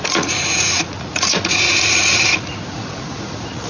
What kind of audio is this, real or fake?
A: fake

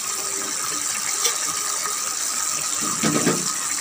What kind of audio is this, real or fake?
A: real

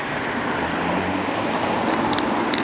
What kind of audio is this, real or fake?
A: real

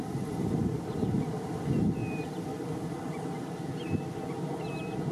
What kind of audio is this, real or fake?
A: real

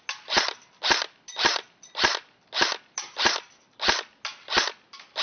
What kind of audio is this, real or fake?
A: real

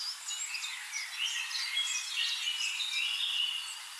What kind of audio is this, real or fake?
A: real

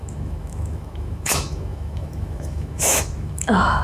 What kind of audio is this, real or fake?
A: fake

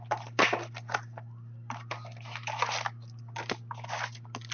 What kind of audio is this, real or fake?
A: real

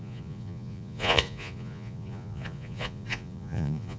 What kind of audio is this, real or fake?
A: fake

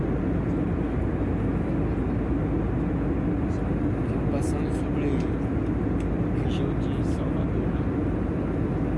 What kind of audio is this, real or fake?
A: real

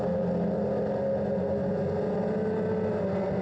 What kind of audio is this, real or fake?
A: real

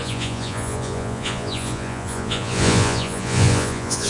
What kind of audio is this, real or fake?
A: fake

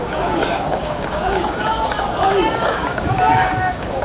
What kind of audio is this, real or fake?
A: fake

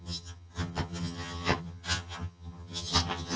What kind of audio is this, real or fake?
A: fake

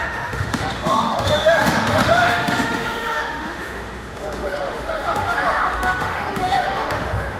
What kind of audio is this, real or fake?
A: fake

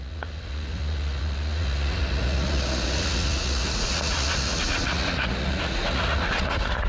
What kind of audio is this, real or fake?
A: fake